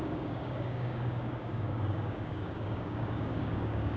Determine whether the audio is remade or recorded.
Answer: remade